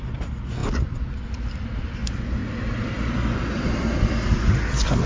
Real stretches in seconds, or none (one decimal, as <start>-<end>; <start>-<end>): none